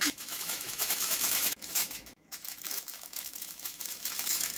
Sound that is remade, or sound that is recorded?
remade